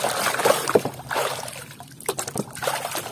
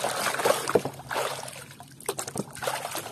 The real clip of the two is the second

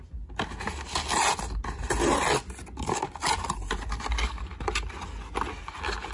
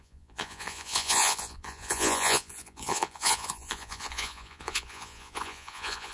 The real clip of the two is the first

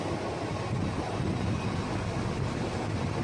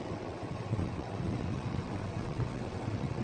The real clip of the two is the first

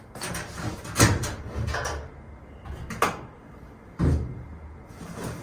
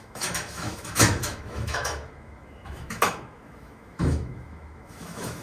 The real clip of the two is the first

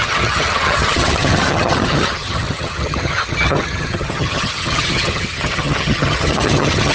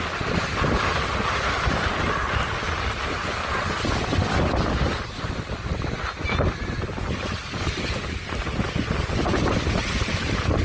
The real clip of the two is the second